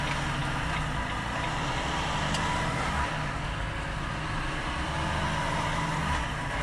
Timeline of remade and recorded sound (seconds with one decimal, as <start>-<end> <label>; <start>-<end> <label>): 0.0-6.6 recorded

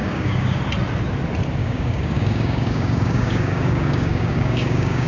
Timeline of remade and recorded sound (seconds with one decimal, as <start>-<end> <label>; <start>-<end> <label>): 0.0-0.6 remade; 0.6-1.6 recorded; 1.6-5.1 remade